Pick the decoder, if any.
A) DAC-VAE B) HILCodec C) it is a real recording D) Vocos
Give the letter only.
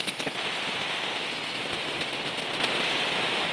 C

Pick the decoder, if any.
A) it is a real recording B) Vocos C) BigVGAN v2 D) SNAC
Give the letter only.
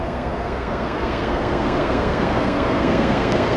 D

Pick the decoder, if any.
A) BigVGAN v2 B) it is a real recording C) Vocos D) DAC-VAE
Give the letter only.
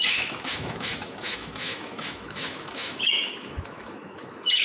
D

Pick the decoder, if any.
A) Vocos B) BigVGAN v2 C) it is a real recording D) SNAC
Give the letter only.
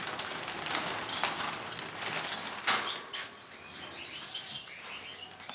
C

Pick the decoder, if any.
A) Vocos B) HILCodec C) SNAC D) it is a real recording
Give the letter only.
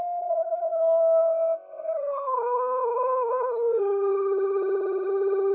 C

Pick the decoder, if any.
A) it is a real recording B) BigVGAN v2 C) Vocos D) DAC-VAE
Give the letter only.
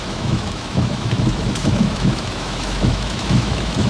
D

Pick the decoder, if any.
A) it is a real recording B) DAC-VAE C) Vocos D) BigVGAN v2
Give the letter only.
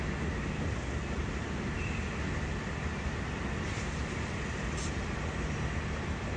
A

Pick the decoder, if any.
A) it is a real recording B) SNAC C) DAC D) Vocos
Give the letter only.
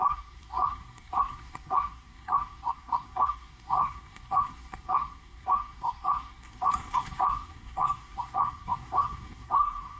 B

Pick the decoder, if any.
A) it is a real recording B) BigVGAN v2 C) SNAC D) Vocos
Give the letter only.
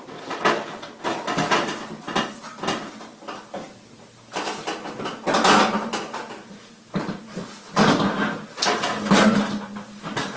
A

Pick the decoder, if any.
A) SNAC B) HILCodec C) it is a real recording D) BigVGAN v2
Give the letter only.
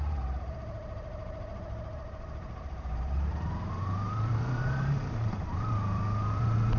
D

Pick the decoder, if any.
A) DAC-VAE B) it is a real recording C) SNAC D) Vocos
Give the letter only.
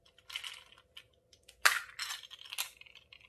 B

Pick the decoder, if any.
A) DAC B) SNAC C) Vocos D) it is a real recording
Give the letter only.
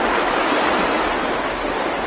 D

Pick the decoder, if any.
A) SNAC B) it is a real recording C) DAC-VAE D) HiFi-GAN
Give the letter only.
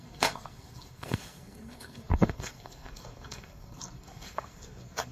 A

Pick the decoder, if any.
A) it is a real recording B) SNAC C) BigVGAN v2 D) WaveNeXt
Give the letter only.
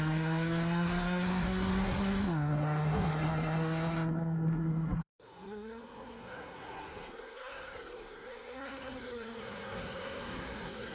B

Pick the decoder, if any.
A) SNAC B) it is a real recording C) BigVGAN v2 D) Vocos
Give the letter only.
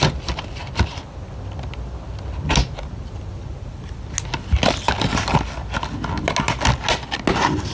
B